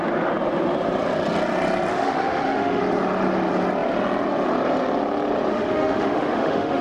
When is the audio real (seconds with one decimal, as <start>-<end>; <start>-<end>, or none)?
0.0-1.9; 2.8-5.5